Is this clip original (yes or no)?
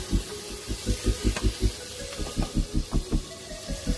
yes